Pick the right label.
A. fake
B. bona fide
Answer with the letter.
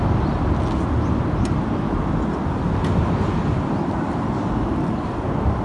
B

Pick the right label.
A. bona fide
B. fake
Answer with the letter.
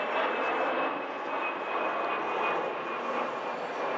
A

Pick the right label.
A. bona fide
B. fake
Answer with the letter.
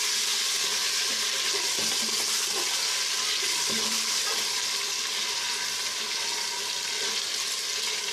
A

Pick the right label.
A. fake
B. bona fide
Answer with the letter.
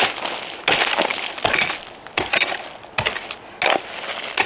B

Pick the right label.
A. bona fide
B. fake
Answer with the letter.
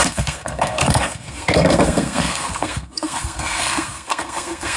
B